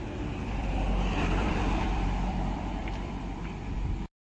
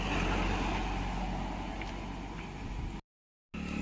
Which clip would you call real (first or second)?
second